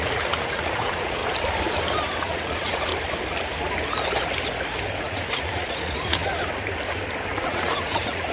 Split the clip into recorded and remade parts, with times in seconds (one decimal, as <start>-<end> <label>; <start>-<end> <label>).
0.0-1.2 remade; 1.2-2.2 recorded; 2.2-2.9 remade; 2.9-5.0 recorded; 5.0-6.2 remade; 6.2-7.3 recorded; 7.3-8.3 remade